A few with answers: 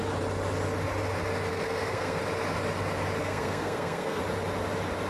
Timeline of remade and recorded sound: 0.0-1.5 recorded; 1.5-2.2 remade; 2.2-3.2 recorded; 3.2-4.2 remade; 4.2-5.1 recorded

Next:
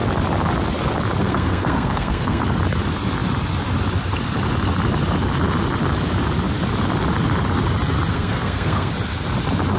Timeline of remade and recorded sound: 0.0-1.2 recorded; 1.2-2.4 remade; 2.4-8.1 recorded; 8.1-8.9 remade; 8.9-9.8 recorded

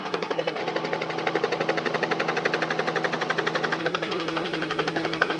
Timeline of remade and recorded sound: 0.0-0.6 remade; 0.6-3.8 recorded; 3.8-5.4 remade

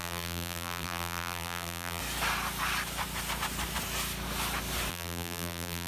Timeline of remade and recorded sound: 0.0-2.0 remade; 2.0-4.9 recorded; 4.9-5.9 remade

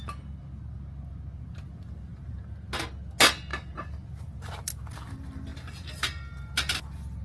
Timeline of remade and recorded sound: 0.0-2.1 recorded; 2.1-2.8 remade; 2.8-3.5 recorded; 3.5-4.5 remade; 4.5-5.5 recorded; 5.5-6.5 remade; 6.5-7.2 recorded

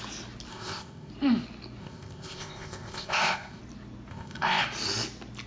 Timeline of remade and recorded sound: 0.0-0.5 recorded; 0.5-1.1 remade; 1.1-1.8 recorded; 1.8-3.6 remade; 3.6-4.1 recorded; 4.1-4.6 remade; 4.6-5.5 recorded

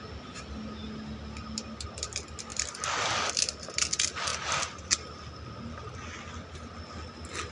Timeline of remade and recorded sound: 0.0-0.8 recorded; 0.8-1.9 remade; 1.9-2.5 recorded; 2.5-3.3 remade; 3.3-7.5 recorded